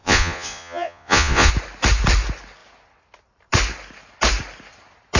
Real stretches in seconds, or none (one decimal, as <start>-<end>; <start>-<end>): 1.5-5.2